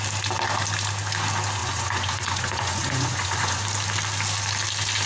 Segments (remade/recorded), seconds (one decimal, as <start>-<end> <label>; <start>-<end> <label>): 0.0-1.6 recorded; 1.6-3.6 remade; 3.6-5.1 recorded